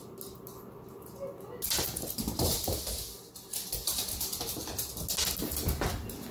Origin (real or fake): real